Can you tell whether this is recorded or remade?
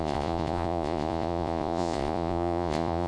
remade